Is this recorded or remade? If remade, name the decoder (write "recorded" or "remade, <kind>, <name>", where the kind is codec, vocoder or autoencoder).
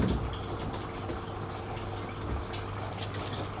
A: recorded